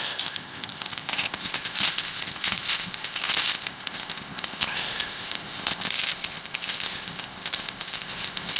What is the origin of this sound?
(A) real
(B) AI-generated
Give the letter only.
B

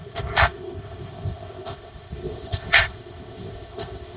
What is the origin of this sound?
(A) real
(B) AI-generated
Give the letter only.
B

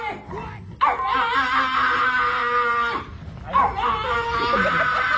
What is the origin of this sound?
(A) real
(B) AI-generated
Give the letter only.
A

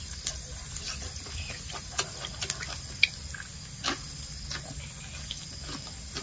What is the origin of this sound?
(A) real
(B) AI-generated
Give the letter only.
A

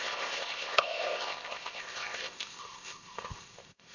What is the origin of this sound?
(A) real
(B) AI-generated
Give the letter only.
B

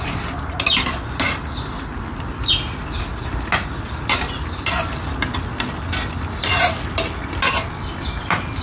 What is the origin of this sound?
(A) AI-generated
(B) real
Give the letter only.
B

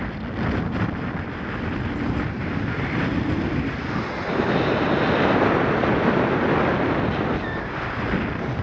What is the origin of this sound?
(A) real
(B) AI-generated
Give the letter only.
A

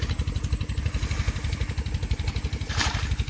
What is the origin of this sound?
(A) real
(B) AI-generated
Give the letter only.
A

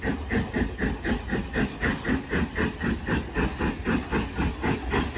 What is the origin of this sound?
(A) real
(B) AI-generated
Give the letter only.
A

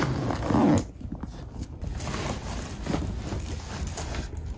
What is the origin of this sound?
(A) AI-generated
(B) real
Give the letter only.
B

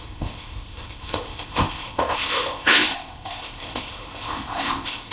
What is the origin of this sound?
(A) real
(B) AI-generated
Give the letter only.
B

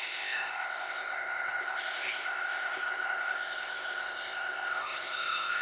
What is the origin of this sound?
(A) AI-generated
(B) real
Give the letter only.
A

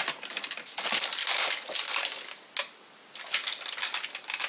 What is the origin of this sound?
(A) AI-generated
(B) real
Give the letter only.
B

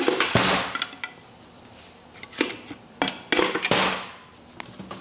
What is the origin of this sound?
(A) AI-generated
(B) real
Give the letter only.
B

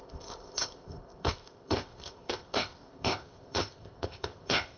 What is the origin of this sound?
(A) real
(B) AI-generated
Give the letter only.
B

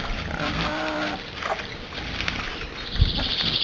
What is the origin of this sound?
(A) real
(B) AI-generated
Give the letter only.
A